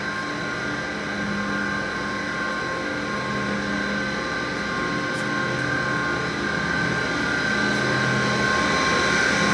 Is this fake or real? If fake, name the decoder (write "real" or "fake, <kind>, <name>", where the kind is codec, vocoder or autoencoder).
real